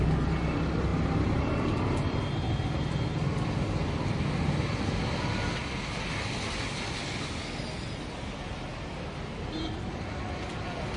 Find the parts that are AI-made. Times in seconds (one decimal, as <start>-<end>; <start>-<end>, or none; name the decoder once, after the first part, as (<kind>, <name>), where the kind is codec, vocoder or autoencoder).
8.7-11.0 (vocoder, BigVGAN v2)